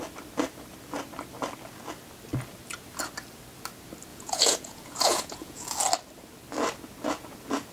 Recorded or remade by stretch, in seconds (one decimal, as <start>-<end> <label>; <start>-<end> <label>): 0.0-4.1 recorded; 4.1-5.7 remade; 5.7-7.7 recorded